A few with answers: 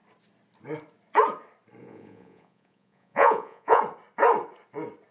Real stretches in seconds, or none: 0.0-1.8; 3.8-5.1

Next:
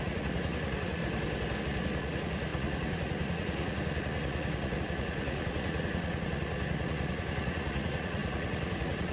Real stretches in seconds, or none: 1.0-1.6

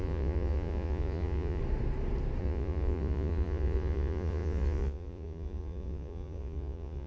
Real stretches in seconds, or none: 1.6-2.4

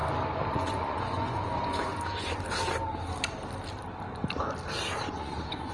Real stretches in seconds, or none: 0.0-0.5; 1.9-5.1